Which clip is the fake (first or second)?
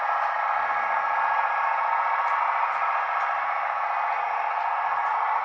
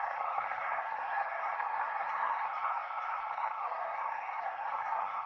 second